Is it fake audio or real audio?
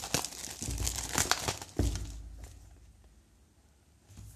real